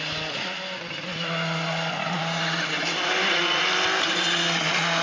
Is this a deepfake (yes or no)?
no